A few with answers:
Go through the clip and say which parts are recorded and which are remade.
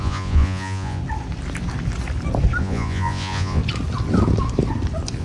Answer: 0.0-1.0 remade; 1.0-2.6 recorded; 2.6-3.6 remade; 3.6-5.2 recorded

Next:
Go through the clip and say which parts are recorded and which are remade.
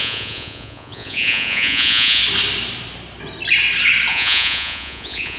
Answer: 0.0-2.2 remade; 2.2-4.1 recorded; 4.1-5.4 remade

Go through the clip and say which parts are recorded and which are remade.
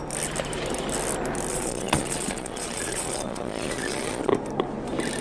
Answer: 0.0-1.5 recorded; 1.5-4.3 remade; 4.3-5.2 recorded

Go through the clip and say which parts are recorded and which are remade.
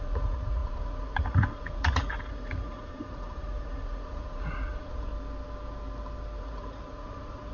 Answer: 0.0-5.1 remade; 5.1-6.4 recorded; 6.4-7.5 remade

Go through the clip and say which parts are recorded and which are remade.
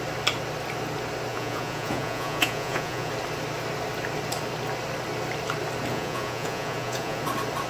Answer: 0.0-1.3 recorded; 1.3-3.1 remade; 3.1-5.9 recorded; 5.9-7.2 remade; 7.2-7.7 recorded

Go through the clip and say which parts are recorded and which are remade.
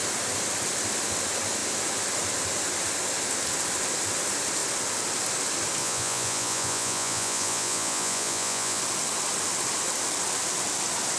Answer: 0.0-5.8 recorded; 5.8-8.8 remade; 8.8-11.2 recorded